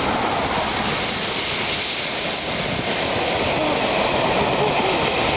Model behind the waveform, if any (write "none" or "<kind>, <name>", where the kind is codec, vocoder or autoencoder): none